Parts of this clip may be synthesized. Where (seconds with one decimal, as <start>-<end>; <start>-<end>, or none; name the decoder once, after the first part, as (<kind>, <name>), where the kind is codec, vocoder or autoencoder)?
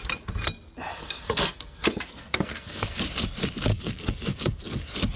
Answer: 1.0-3.0 (codec, SNAC); 3.7-4.6